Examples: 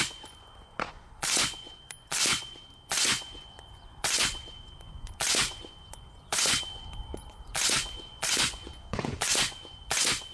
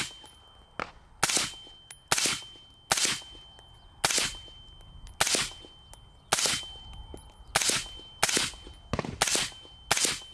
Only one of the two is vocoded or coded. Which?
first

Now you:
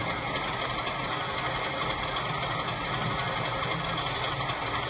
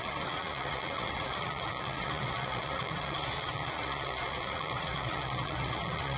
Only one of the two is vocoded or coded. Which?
second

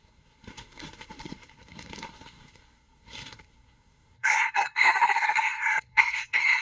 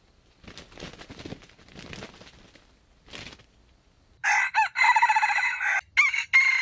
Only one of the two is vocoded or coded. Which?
first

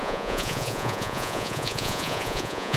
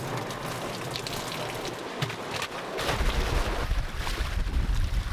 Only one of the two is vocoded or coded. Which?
first